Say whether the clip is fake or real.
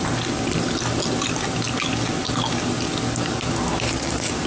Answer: real